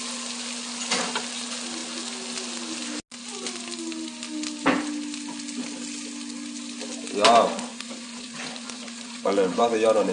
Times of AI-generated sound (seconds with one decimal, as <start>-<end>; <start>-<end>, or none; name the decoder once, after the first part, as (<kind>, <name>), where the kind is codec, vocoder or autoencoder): 7.7-9.6 (vocoder, Vocos)